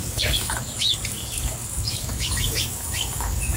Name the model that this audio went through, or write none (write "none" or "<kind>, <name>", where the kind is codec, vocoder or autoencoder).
codec, DAC